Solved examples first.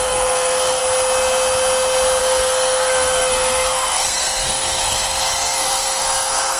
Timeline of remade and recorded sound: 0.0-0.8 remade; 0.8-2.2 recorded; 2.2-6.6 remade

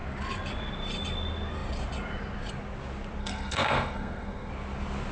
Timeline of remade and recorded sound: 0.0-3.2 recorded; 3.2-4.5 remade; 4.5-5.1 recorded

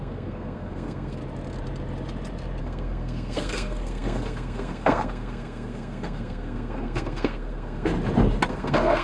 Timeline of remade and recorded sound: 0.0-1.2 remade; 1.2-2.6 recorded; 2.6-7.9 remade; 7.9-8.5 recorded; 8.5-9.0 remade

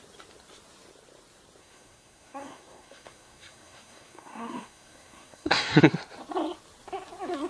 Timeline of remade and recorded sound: 0.0-1.6 recorded; 1.6-5.8 remade; 5.8-7.5 recorded

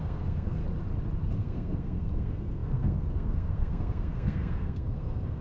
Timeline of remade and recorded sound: 0.0-0.6 remade; 0.6-1.3 recorded; 1.3-5.4 remade